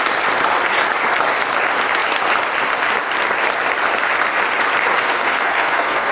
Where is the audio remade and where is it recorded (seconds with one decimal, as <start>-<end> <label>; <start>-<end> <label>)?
0.0-5.0 recorded; 5.0-6.1 remade